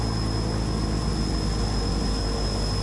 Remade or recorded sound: recorded